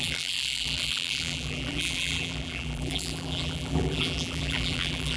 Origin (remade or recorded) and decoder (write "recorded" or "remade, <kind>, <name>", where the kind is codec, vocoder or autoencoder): remade, vocoder, BigVGAN v2